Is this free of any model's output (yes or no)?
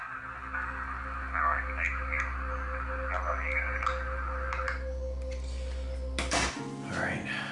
yes